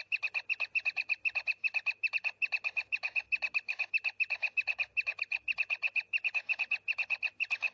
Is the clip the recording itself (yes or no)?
yes